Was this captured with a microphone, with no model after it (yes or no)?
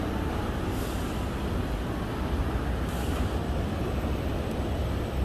yes